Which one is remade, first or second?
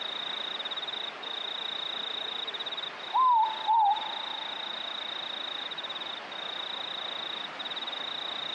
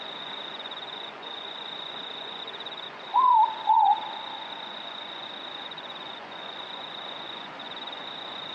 second